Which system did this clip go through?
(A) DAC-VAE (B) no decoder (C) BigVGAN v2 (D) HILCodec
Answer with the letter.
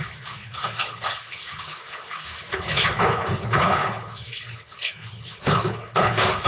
D